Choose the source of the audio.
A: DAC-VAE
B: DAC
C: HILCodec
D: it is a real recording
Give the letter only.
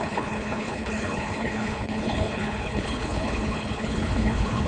C